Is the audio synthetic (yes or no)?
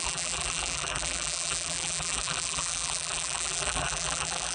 yes